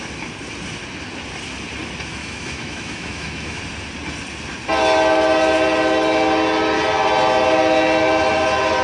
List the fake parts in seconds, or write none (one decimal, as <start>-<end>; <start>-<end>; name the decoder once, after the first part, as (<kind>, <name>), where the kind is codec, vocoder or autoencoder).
2.2-3.6 (autoencoder, DAC-VAE)